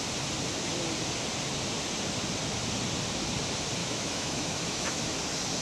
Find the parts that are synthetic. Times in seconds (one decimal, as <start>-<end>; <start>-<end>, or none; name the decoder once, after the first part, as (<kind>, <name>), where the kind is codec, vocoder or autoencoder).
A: 3.8-5.0 (autoencoder, DAC-VAE)